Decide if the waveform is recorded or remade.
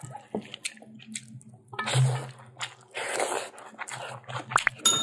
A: recorded